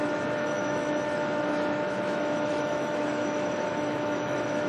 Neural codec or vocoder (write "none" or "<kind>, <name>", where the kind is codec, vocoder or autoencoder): autoencoder, DAC-VAE